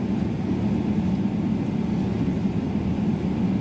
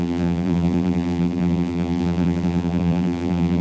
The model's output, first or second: second